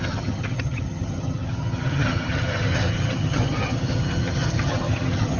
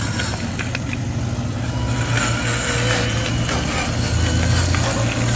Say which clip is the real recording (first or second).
second